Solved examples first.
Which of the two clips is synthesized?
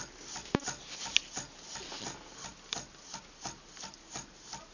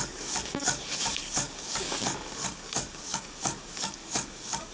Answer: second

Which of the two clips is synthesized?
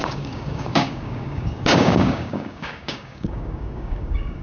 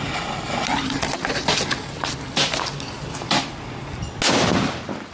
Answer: first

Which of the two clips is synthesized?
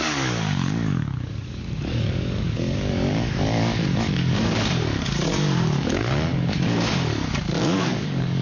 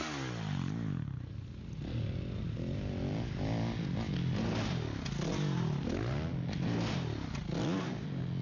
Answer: first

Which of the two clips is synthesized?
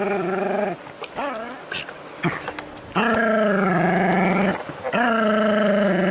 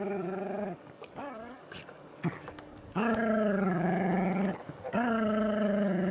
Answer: second